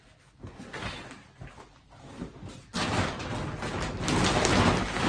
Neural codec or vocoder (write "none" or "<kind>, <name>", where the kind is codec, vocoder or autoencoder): none